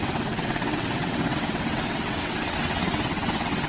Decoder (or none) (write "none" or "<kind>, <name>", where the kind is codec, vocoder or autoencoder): vocoder, WaveNeXt